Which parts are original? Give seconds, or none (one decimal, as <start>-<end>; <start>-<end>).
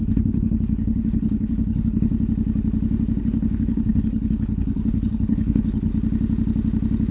2.1-3.2; 5.9-7.1